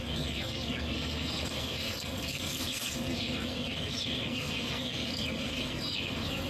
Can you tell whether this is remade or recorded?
remade